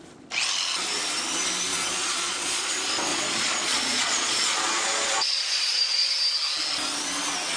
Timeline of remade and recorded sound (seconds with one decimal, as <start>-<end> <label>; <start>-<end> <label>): 0.0-1.7 recorded; 1.7-2.7 remade; 2.7-3.1 recorded; 3.1-6.1 remade; 6.1-7.6 recorded